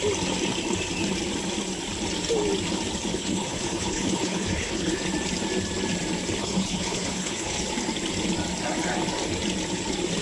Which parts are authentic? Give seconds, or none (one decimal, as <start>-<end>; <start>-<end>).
0.0-3.1; 5.0-6.4; 7.6-10.2